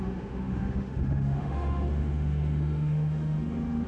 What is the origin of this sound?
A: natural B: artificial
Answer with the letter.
B